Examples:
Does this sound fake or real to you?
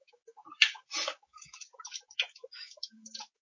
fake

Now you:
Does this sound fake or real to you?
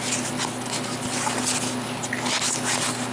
real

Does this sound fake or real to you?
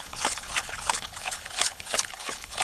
fake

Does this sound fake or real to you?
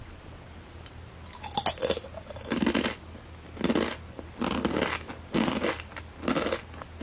real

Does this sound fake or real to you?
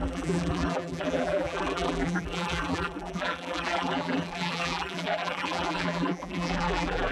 fake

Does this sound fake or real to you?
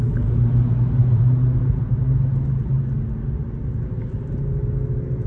real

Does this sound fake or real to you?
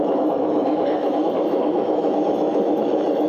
fake